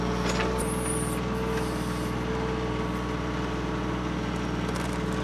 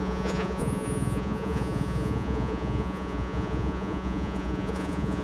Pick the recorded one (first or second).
first